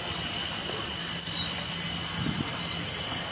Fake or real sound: real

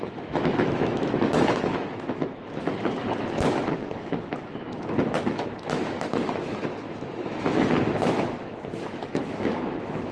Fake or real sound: fake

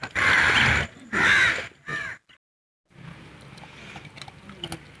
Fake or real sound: real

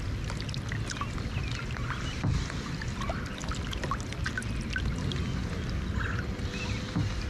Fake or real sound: real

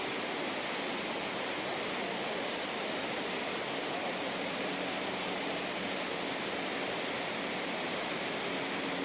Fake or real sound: real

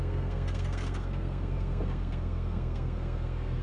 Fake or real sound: fake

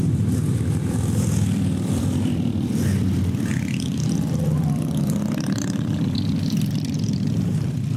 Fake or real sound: fake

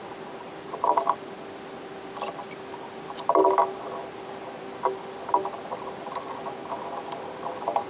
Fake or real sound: real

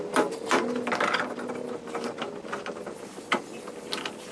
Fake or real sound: real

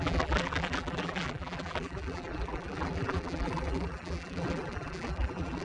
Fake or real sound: fake